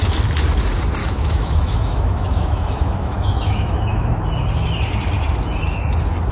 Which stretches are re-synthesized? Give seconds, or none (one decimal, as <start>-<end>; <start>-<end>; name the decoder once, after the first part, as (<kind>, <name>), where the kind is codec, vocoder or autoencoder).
1.0-4.2 (autoencoder, DAC-VAE)